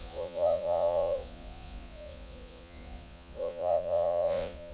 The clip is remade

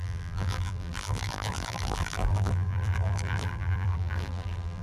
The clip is remade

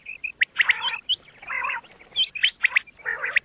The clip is recorded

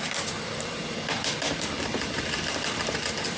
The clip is remade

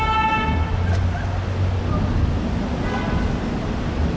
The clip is recorded